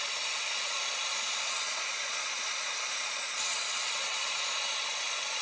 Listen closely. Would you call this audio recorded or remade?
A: remade